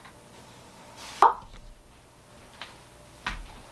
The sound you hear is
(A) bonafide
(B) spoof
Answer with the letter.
A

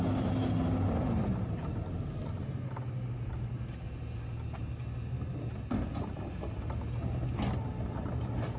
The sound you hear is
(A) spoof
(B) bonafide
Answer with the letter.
B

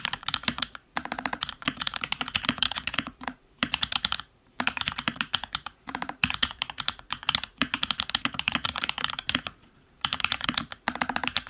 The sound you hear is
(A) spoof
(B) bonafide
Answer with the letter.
A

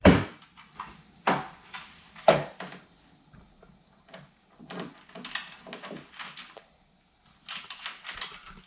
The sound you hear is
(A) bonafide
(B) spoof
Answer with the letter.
A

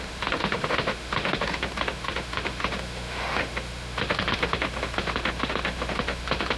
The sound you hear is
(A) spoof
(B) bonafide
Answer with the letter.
A